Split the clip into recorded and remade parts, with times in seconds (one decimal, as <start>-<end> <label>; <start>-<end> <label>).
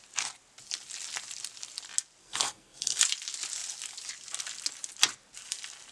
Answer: 0.0-2.2 recorded; 2.2-3.0 remade; 3.0-5.9 recorded